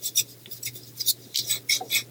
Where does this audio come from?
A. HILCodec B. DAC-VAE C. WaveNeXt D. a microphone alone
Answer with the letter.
D